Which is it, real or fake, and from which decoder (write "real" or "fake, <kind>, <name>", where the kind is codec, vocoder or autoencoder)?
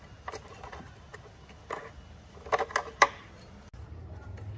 real